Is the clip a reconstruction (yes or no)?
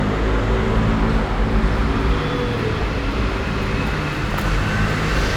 no